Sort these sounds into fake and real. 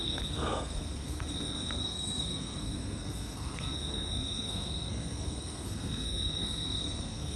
fake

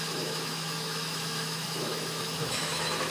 fake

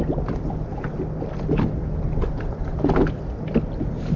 real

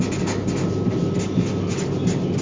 real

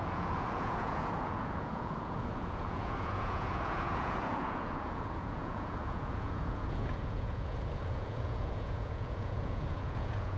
fake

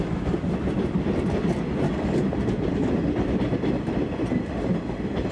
real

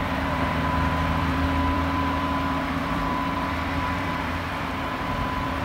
fake